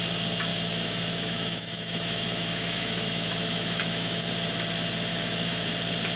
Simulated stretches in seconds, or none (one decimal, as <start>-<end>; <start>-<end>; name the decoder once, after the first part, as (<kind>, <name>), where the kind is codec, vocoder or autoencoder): 0.5-4.2 (autoencoder, DAC-VAE); 5.1-5.7